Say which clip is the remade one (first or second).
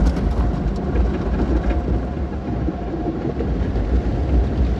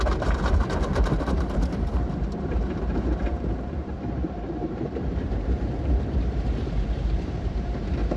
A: second